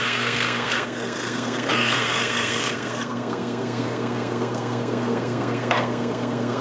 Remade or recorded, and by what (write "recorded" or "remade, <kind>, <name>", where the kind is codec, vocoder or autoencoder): remade, codec, SNAC